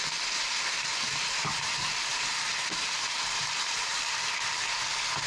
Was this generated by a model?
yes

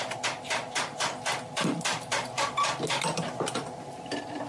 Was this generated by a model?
no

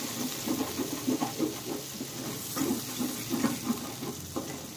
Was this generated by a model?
no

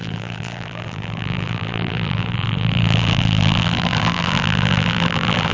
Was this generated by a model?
yes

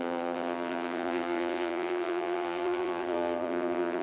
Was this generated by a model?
yes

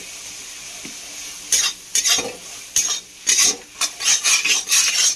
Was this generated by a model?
no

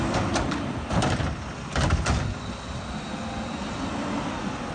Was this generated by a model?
no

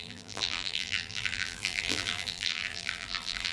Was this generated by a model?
yes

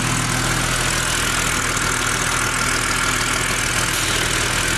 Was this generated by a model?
no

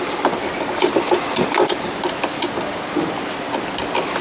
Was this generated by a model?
no